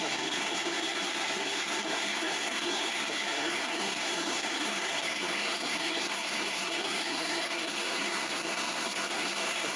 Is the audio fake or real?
fake